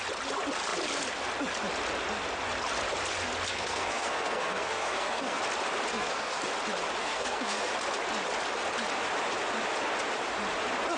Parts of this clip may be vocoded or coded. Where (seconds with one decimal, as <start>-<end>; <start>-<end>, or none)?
3.5-5.4; 5.9-6.4; 7.0-7.7